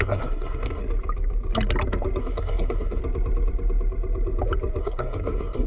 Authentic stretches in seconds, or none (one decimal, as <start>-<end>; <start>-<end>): 0.8-2.2; 3.0-4.8

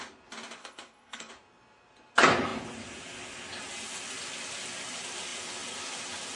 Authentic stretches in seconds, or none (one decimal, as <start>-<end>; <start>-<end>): 0.0-0.6; 1.3-6.4

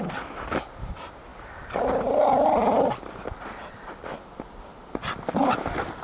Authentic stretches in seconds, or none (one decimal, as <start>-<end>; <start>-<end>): 0.0-6.0

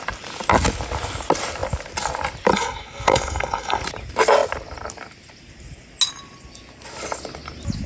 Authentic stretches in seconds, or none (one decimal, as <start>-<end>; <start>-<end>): 0.0-2.5; 3.8-7.9

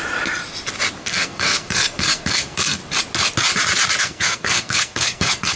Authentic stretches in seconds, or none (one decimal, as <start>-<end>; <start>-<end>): 0.0-1.0; 2.8-4.0

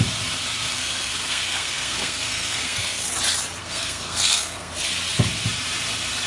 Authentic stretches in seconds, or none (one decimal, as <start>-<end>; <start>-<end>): 0.0-0.7; 3.1-3.6; 4.7-6.3